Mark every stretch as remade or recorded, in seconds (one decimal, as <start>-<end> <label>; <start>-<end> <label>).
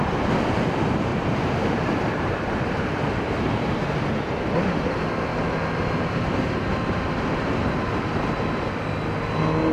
0.0-1.1 recorded; 1.1-4.1 remade; 4.1-9.7 recorded